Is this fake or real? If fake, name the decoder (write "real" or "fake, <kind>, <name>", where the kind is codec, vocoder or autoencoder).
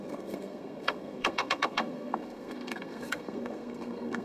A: fake, codec, SNAC